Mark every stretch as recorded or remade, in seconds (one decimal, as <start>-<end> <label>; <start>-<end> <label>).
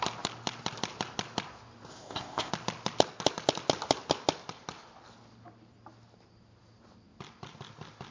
0.0-1.9 recorded; 1.9-2.5 remade; 2.5-8.1 recorded